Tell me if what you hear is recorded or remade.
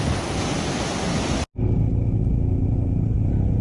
recorded